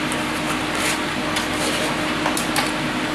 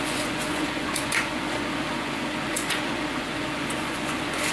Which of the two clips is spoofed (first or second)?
second